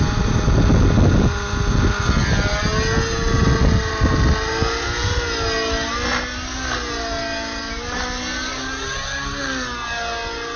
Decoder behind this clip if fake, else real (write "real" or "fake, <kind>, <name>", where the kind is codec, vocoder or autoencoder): real